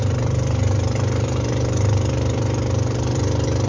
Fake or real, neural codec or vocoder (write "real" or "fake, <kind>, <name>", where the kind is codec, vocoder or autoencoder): fake, vocoder, BigVGAN v2